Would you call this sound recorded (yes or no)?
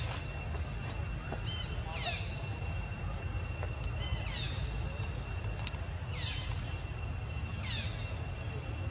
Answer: yes